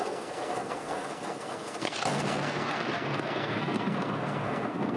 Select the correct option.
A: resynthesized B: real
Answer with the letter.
A